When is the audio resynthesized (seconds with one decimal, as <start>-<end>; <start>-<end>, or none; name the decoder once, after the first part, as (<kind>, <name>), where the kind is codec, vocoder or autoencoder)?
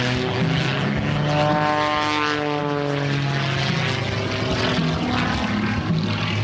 none